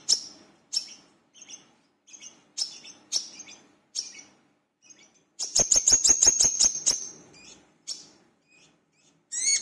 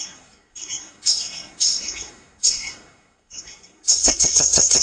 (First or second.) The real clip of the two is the first